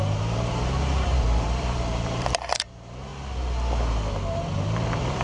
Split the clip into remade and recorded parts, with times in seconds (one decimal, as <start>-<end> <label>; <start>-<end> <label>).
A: 0.0-3.1 remade; 3.1-4.6 recorded; 4.6-5.2 remade